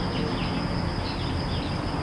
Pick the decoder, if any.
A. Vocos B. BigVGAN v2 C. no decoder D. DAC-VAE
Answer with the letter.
C